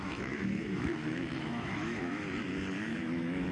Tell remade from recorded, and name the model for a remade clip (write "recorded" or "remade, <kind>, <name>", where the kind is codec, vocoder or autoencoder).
remade, autoencoder, DAC-VAE